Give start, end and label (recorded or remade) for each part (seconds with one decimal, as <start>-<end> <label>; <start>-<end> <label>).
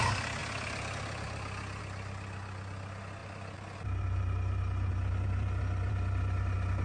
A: 0.0-6.8 recorded